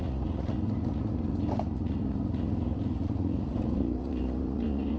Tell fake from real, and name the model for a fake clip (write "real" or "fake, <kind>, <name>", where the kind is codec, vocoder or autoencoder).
fake, vocoder, Vocos